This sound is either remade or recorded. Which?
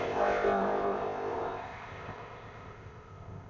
remade